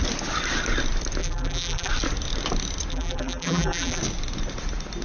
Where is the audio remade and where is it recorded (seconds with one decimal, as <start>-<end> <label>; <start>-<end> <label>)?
0.0-1.2 recorded; 1.2-1.9 remade; 1.9-2.9 recorded; 2.9-4.0 remade; 4.0-5.0 recorded